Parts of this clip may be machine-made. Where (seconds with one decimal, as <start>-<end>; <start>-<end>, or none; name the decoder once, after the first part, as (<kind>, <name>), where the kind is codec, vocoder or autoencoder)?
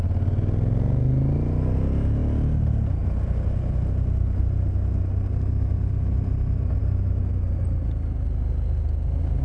none